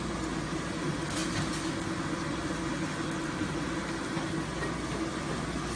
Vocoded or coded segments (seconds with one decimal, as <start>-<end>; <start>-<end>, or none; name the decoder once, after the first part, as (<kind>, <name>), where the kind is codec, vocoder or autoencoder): none